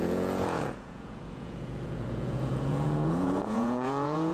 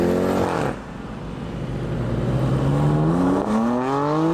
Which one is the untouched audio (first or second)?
second